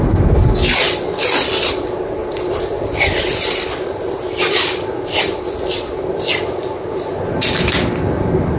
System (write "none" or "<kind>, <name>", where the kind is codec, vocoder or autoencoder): none